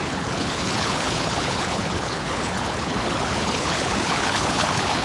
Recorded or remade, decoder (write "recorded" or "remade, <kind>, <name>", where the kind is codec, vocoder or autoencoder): remade, codec, HILCodec